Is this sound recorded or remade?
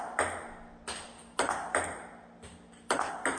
recorded